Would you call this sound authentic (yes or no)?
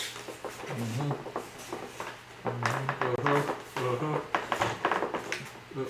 yes